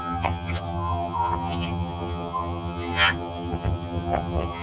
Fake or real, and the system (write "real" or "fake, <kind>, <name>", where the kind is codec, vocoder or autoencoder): fake, vocoder, HiFi-GAN